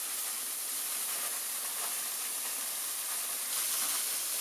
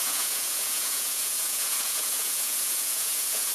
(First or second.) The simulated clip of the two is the second